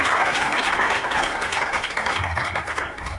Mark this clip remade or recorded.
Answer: remade